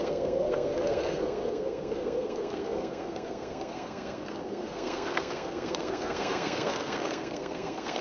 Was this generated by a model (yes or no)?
yes